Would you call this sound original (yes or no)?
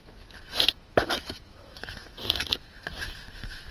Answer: no